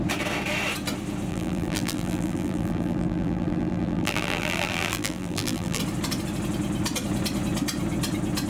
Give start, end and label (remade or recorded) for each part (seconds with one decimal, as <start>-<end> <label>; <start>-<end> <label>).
0.0-1.3 recorded; 1.3-5.8 remade; 5.8-8.5 recorded